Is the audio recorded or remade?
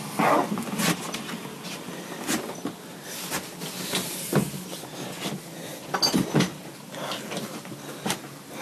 recorded